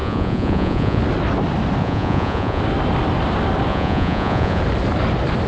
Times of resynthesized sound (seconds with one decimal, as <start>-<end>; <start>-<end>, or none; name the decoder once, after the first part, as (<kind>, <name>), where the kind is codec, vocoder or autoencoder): 0.0-1.0 (vocoder, Vocos); 1.8-2.6; 3.7-4.6